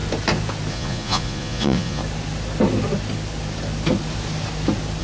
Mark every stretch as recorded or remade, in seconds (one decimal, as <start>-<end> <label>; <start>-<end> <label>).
0.0-0.7 recorded; 0.7-2.0 remade; 2.0-5.0 recorded